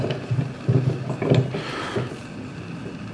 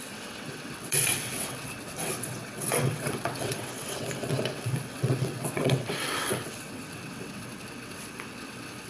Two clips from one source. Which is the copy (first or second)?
second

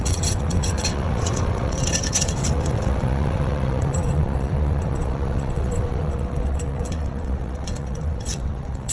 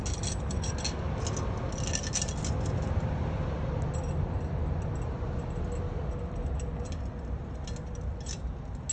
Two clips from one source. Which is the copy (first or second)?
first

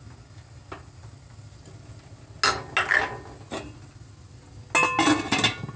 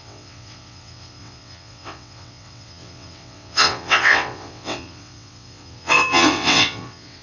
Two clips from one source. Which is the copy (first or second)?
second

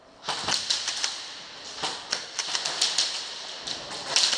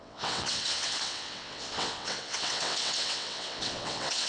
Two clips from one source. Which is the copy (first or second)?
second